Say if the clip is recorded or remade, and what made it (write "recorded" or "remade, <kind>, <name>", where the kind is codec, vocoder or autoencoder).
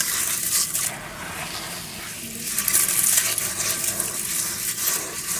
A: recorded